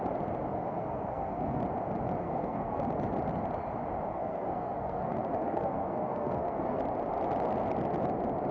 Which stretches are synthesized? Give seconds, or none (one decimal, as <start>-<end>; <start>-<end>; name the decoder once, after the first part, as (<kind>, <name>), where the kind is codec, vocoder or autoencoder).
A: 0.5-1.6 (codec, SNAC); 2.2-2.9; 4.1-6.8